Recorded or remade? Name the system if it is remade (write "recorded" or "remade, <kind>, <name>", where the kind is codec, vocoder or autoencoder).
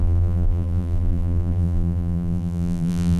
remade, vocoder, BigVGAN v2